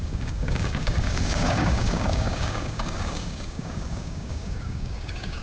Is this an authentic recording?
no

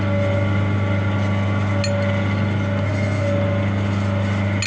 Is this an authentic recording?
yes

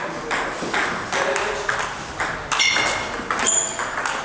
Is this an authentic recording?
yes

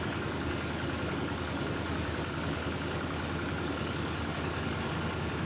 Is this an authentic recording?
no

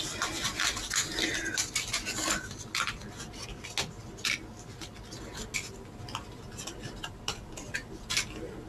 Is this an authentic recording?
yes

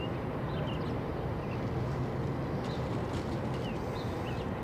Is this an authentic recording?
yes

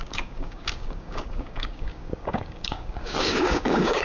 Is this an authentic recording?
no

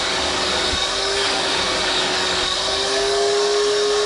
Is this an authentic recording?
no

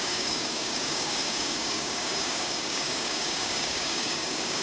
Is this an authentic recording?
no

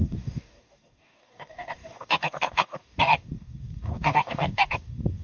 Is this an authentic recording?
no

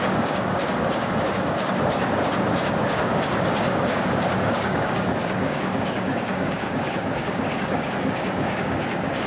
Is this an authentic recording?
no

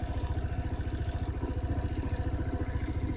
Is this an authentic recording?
yes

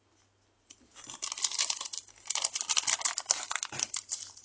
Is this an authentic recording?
yes